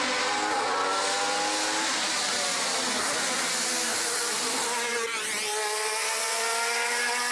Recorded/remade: recorded